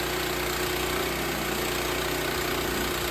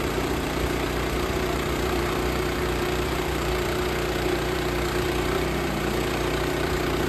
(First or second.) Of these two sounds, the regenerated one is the second